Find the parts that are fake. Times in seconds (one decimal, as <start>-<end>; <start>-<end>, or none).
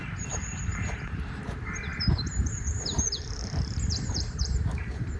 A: 0.0-5.2